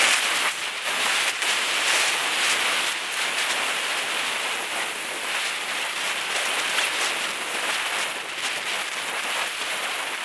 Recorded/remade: recorded